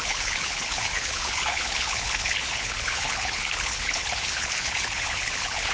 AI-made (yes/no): yes